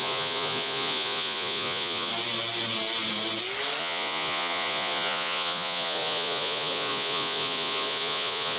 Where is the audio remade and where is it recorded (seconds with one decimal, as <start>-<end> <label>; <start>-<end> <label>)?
0.0-2.1 remade; 2.1-3.8 recorded; 3.8-8.6 remade